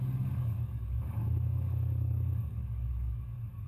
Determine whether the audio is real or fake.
fake